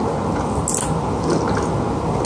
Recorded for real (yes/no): yes